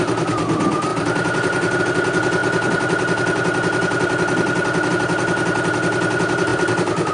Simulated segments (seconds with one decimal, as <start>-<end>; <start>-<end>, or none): 6.5-7.1